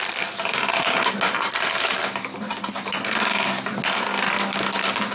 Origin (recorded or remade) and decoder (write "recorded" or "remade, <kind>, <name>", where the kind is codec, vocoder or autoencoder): recorded